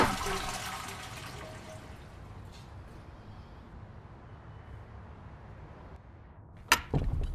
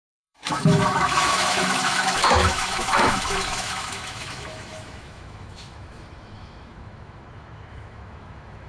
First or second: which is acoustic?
first